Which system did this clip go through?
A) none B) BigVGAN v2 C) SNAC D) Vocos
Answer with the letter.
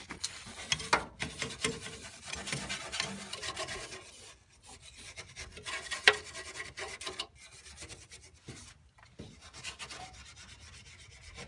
A